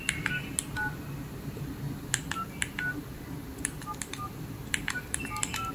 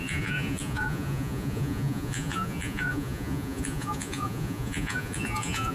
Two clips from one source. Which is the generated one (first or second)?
second